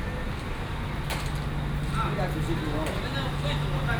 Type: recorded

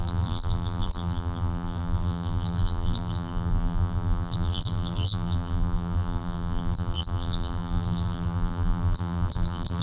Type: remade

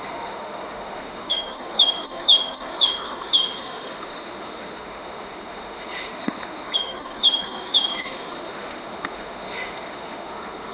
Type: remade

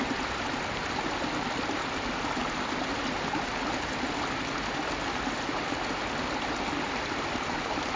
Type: recorded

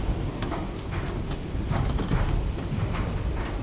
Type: recorded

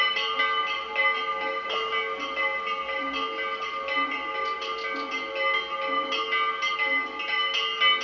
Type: recorded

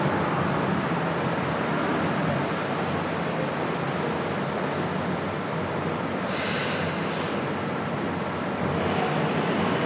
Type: recorded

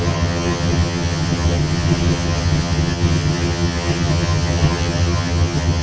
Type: remade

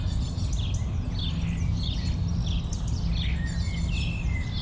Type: recorded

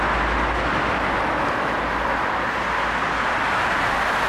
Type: recorded